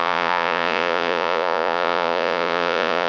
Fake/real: fake